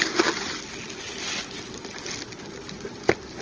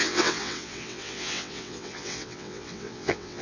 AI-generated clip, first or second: second